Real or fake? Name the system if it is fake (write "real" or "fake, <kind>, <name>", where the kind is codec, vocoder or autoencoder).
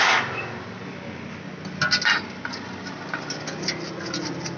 real